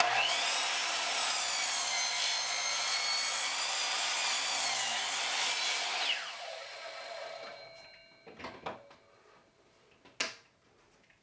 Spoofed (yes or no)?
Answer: no